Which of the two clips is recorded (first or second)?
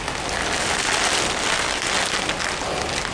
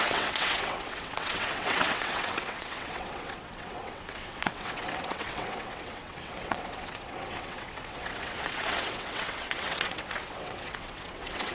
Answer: first